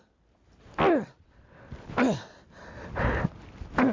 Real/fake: real